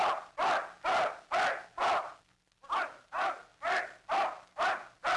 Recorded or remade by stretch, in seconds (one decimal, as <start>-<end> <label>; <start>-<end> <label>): 0.0-5.2 recorded